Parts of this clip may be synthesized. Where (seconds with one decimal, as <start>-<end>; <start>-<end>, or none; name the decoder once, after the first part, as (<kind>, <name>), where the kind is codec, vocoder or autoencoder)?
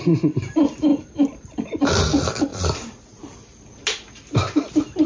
0.9-1.8 (vocoder, BigVGAN v2); 2.5-3.2